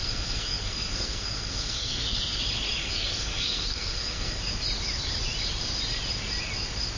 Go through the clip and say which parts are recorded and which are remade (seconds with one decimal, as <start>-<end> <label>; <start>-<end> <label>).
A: 0.0-2.4 remade; 2.4-2.8 recorded; 2.8-4.4 remade; 4.4-7.0 recorded